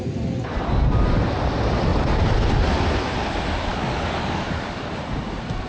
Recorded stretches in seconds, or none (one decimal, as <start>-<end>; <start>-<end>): 0.0-3.7; 4.9-5.7